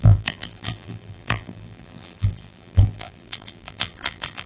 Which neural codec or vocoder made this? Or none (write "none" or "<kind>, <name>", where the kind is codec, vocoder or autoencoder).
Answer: vocoder, BigVGAN v2